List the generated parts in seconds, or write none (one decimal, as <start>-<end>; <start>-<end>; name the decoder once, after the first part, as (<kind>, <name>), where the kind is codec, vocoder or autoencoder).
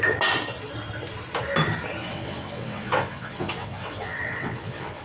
2.0-5.0 (vocoder, WaveNeXt)